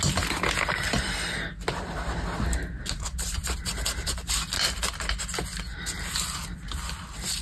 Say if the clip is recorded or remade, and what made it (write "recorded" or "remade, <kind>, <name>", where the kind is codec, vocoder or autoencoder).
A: recorded